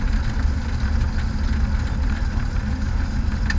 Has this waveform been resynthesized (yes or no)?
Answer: no